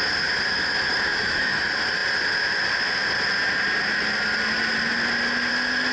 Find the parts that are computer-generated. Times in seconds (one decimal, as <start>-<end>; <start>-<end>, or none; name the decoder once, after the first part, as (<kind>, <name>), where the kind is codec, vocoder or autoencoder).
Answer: 1.1-1.6 (autoencoder, DAC-VAE)